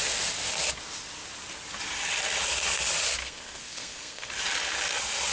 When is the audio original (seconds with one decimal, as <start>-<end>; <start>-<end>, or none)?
0.0-3.2; 4.3-5.3